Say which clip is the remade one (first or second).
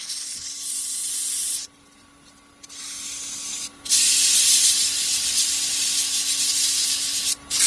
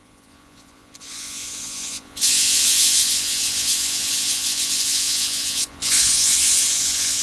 second